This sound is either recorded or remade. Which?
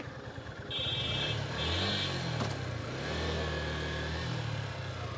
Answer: recorded